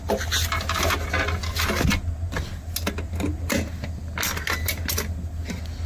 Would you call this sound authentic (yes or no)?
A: yes